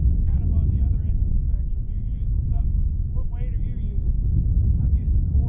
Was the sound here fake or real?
real